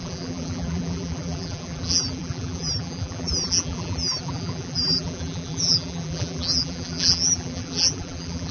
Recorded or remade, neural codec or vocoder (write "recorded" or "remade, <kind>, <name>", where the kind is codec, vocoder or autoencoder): remade, vocoder, BigVGAN v2